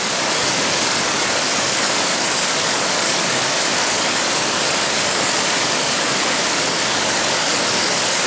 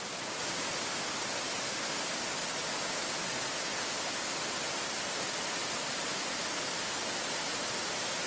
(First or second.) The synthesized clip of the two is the first